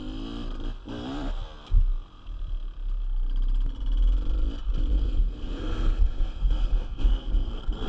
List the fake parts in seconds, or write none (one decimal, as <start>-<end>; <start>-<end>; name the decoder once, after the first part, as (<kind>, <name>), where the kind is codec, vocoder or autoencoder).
4.9-7.9 (codec, SNAC)